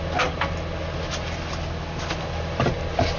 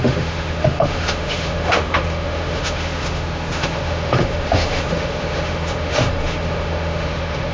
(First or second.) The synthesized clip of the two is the second